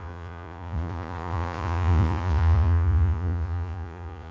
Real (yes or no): no